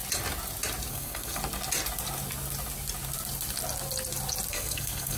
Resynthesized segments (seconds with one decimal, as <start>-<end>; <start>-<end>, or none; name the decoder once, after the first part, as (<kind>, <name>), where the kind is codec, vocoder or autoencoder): 0.9-1.4 (codec, SNAC); 4.5-5.2